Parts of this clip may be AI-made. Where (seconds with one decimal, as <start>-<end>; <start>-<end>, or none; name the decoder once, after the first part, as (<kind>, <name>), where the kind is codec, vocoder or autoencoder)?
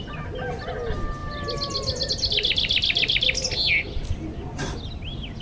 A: none